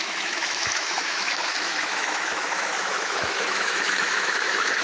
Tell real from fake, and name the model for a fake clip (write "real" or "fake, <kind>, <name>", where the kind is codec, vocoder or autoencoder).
fake, autoencoder, DAC-VAE